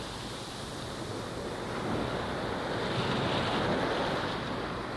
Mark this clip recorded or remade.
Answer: recorded